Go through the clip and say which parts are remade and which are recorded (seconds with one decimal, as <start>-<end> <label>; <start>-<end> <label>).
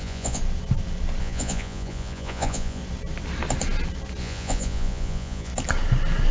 0.0-0.4 remade; 0.4-1.2 recorded; 1.2-2.8 remade; 2.8-4.2 recorded; 4.2-5.5 remade; 5.5-6.3 recorded